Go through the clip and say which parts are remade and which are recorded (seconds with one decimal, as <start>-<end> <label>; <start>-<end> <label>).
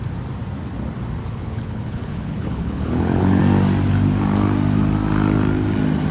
0.0-1.2 recorded; 1.2-3.4 remade; 3.4-6.1 recorded